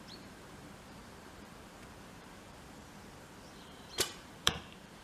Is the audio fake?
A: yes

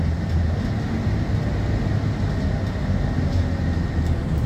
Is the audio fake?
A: no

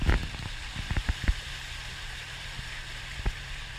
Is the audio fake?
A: yes